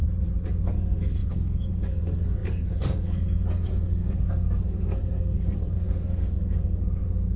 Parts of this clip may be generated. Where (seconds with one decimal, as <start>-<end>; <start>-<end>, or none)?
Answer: 0.6-7.4